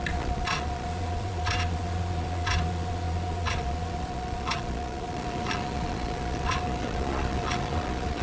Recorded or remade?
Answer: remade